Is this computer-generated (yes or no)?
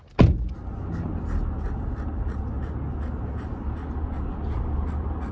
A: no